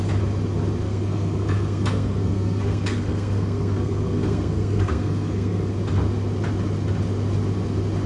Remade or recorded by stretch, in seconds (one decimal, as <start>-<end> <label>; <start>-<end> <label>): 0.0-0.8 recorded; 0.8-5.7 remade; 5.7-8.1 recorded